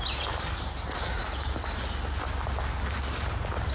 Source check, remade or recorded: recorded